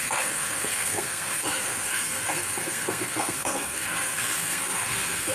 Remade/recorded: remade